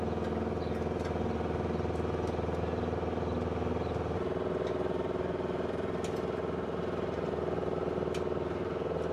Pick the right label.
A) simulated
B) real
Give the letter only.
B